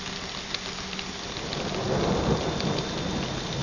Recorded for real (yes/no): yes